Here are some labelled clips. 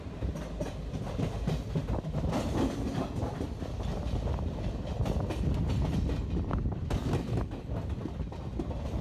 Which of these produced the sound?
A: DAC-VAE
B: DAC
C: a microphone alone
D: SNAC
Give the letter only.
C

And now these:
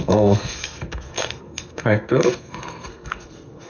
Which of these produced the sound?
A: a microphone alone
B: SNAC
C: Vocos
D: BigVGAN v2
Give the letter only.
B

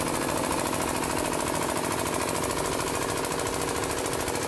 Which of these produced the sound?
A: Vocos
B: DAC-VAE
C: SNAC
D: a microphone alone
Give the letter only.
D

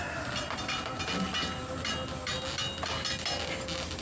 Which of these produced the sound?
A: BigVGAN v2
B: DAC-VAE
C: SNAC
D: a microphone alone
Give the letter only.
D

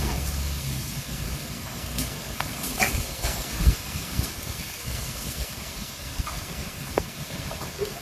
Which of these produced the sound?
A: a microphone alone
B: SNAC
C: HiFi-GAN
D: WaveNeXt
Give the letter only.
B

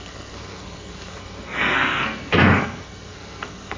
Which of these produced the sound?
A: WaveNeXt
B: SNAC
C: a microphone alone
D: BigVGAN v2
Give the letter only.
B